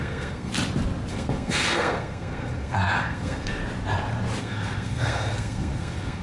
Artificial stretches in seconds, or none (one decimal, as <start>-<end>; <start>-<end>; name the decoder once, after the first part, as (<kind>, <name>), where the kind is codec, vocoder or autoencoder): 0.0-0.5 (codec, SNAC); 1.1-3.6; 4.4-6.2